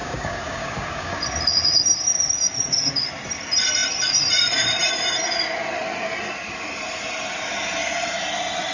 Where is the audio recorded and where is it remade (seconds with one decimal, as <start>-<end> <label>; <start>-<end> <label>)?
0.0-1.2 remade; 1.2-8.7 recorded